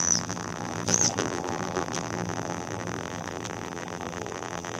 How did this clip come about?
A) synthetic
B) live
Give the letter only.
A